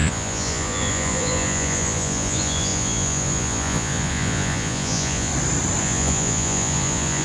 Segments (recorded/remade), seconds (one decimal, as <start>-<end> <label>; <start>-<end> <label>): 0.0-5.3 remade; 5.3-5.8 recorded; 5.8-7.2 remade